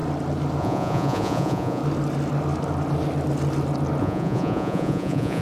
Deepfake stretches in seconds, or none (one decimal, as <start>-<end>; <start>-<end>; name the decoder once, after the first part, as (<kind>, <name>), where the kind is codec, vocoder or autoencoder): 0.6-1.8 (vocoder, Vocos); 4.0-5.4